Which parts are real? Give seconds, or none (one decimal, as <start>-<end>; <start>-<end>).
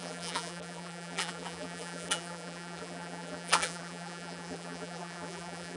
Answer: none